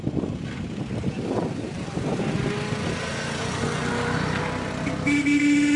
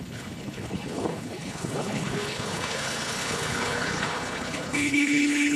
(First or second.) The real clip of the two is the first